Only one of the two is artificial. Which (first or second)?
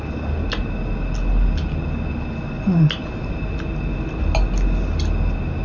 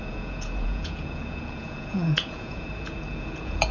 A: second